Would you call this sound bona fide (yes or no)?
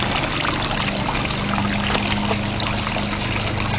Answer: yes